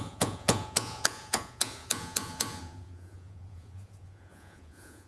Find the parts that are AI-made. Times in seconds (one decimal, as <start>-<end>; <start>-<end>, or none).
0.0-5.1